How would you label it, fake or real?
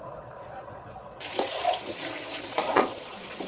fake